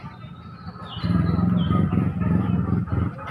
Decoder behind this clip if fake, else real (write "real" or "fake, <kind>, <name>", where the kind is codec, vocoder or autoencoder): real